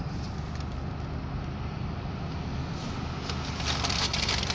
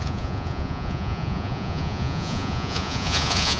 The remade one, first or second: second